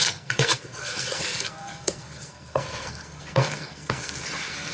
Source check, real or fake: fake